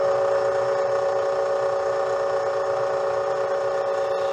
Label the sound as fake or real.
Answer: real